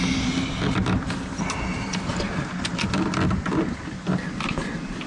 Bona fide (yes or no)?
yes